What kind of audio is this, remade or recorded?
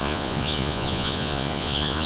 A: remade